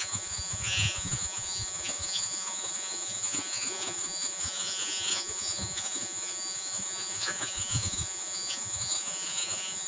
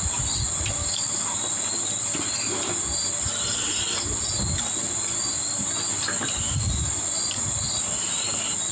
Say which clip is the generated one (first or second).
first